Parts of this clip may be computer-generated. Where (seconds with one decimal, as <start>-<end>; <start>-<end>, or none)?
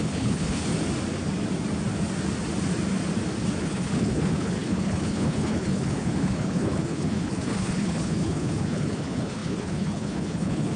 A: 0.0-0.7; 3.6-10.8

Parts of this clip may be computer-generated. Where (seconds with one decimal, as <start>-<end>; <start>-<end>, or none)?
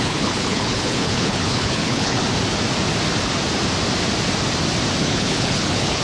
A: 0.0-2.2; 5.0-6.0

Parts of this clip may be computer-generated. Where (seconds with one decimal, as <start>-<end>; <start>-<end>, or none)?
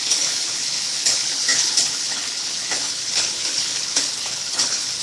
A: 0.0-5.0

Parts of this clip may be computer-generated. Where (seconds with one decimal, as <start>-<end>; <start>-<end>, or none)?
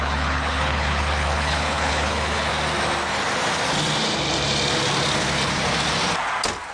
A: 0.0-2.5